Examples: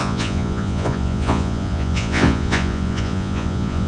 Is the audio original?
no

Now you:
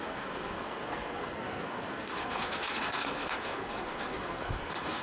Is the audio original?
no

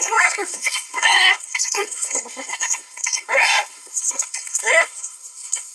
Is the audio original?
no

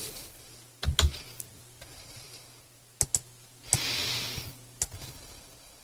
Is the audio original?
yes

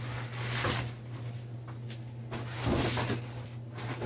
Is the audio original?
yes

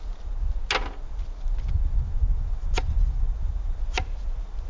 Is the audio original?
yes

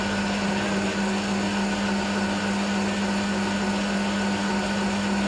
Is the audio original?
yes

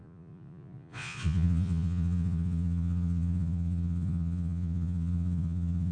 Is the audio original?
no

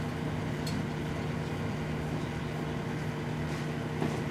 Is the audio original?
yes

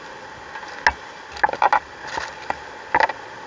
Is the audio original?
yes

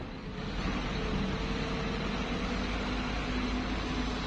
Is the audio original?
yes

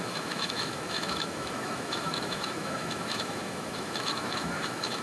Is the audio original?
no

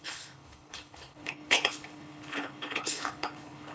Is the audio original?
no